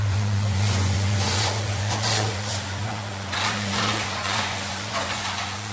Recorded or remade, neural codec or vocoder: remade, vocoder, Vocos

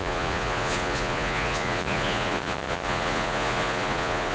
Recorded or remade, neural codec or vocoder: remade, vocoder, Vocos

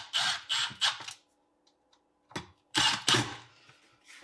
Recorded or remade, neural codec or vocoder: recorded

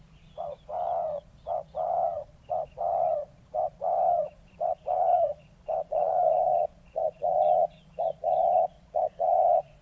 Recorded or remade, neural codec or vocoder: remade, vocoder, Vocos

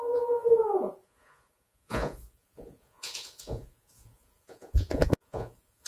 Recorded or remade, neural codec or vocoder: remade, vocoder, Vocos